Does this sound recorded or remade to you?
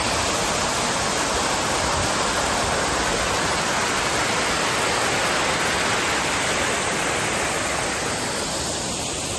recorded